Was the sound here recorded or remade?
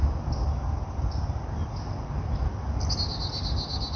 recorded